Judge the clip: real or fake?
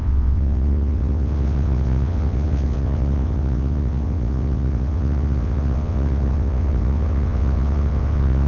fake